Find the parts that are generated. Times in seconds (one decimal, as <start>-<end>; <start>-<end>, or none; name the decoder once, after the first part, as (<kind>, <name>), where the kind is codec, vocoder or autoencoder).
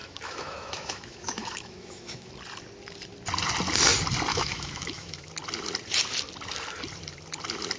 0.0-2.3 (autoencoder, DAC-VAE); 4.3-5.3